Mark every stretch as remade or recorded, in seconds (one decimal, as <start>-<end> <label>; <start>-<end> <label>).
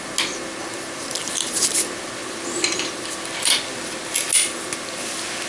0.0-5.5 recorded